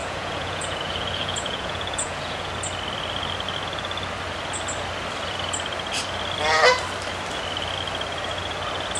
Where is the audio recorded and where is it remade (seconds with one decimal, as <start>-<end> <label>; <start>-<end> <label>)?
0.0-2.5 remade; 2.5-9.0 recorded